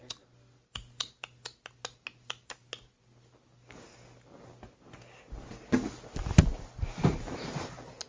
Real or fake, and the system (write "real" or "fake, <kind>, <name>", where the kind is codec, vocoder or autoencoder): real